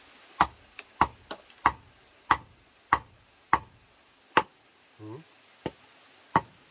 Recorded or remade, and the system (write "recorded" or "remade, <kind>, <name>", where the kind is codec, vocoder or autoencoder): recorded